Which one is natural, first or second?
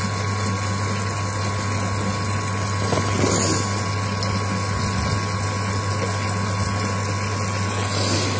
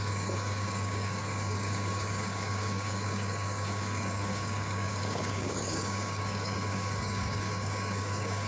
first